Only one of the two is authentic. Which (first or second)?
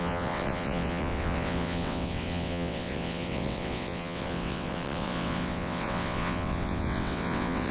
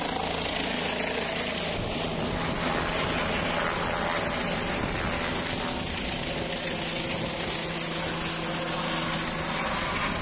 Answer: second